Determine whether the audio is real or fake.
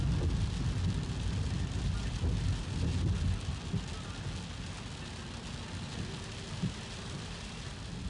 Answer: real